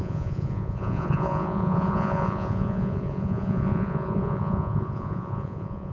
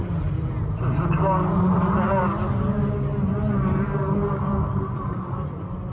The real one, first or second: second